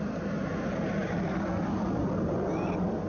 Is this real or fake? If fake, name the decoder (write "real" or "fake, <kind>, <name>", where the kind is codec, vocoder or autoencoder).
real